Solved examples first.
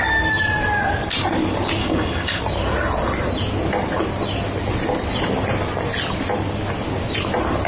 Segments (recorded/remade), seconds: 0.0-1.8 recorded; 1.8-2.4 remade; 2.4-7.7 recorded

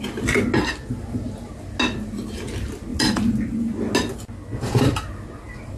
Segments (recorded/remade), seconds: 0.0-5.8 recorded